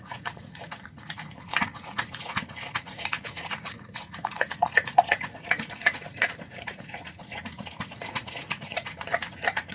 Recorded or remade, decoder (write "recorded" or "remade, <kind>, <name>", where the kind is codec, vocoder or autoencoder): remade, vocoder, Vocos